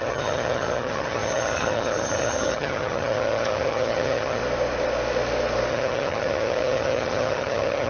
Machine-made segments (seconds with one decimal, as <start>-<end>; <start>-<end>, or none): 0.0-4.4; 5.7-7.9